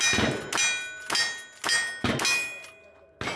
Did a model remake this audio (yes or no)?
no